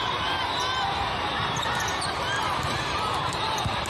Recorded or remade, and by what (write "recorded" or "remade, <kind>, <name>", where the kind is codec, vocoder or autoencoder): recorded